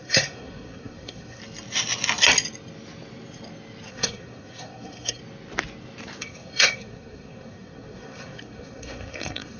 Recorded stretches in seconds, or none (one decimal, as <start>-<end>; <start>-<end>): 1.4-3.9; 5.2-6.2